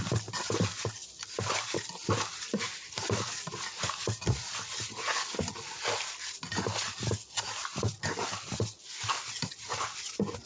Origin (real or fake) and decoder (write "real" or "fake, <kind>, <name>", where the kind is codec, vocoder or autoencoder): real